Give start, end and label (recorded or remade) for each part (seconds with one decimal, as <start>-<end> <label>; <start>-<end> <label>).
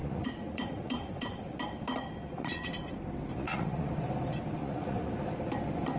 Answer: 0.0-1.6 remade; 1.6-2.3 recorded; 2.3-2.9 remade; 2.9-3.3 recorded; 3.3-3.9 remade; 3.9-4.6 recorded; 4.6-5.1 remade; 5.1-6.0 recorded